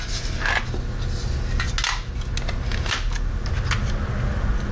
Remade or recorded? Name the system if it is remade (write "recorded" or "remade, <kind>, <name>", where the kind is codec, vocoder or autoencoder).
recorded